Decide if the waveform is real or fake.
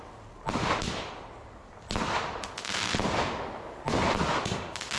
real